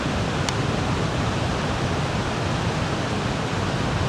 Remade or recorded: recorded